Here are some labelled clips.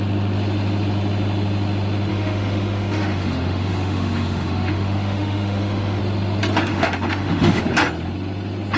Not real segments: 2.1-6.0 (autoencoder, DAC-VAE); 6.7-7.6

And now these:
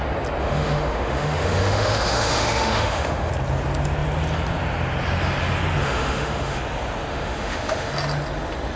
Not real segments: 0.4-3.3 (autoencoder, DAC-VAE); 5.8-6.6; 7.1-7.9

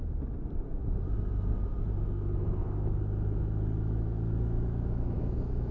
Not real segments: 2.0-5.7 (autoencoder, DAC-VAE)

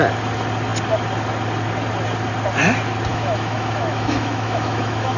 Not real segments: 3.1-5.2 (autoencoder, DAC-VAE)

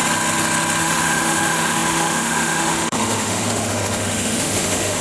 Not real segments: 0.8-5.0 (autoencoder, DAC-VAE)

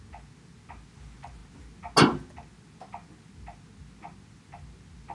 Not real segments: none

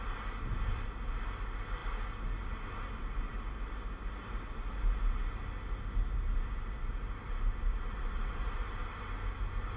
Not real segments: none

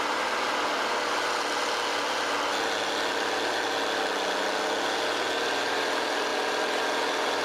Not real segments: none